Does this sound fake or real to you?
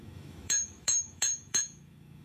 fake